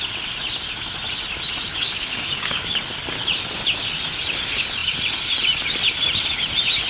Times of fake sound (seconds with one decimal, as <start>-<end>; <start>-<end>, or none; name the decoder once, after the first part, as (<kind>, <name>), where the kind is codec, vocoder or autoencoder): 1.7-2.8 (codec, DAC)